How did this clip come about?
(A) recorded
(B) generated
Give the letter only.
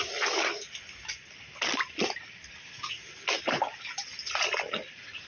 A